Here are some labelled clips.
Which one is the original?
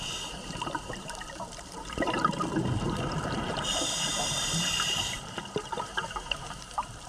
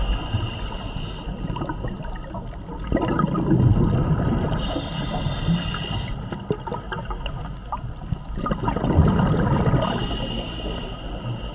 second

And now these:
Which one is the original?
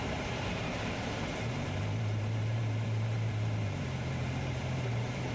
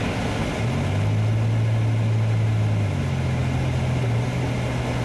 second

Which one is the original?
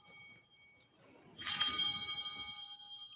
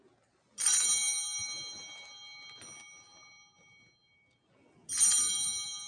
second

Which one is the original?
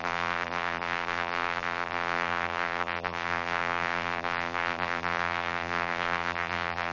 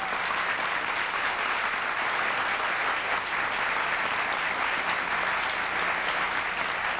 second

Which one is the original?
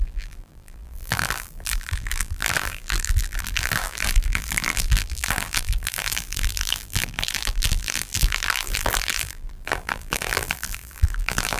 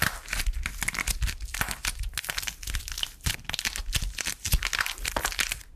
second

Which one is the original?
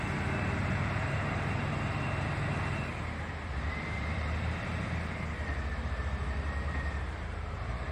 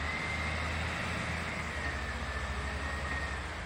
second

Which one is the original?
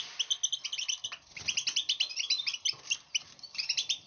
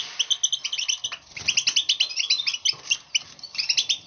second